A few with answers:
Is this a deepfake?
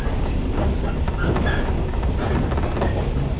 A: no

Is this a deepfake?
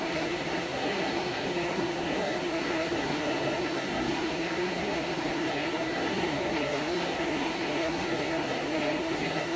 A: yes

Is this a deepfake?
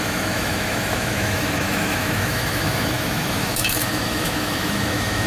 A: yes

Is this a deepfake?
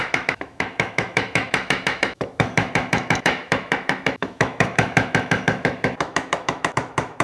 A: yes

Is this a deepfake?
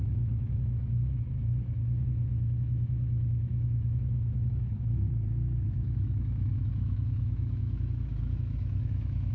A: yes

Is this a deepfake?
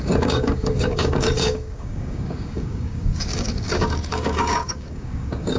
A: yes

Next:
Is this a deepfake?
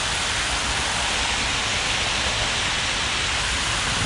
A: no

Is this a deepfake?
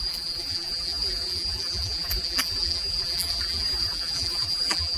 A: yes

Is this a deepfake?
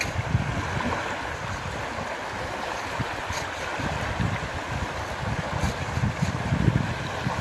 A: no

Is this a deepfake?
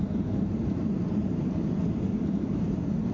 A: yes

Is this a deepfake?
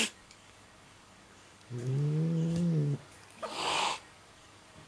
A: yes